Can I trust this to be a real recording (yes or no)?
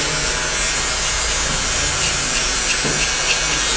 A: yes